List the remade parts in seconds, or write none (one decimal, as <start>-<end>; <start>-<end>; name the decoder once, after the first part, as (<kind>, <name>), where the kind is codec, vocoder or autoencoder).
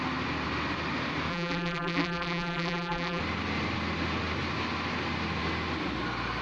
1.3-3.2 (vocoder, BigVGAN v2)